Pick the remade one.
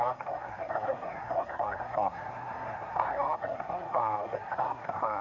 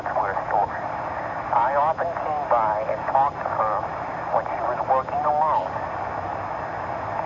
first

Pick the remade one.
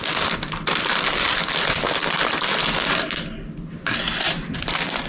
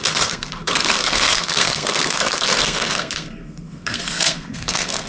second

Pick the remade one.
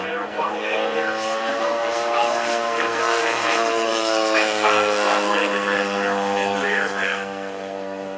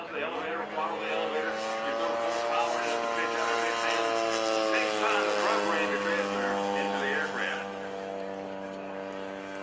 first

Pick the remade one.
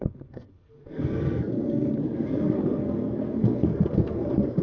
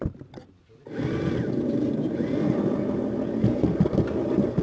first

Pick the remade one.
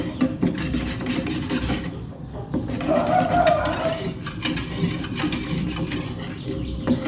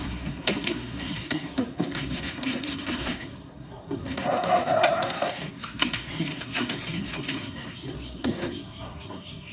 second